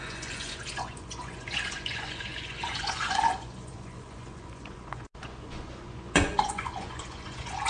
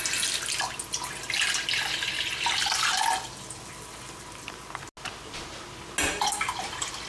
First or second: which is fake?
first